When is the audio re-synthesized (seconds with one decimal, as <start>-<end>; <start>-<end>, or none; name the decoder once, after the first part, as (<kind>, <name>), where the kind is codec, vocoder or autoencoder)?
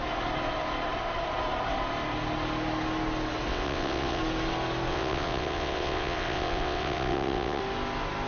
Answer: 3.5-4.2 (vocoder, WaveNeXt); 4.9-7.6